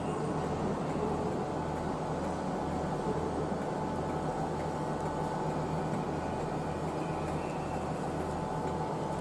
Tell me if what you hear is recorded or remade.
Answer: recorded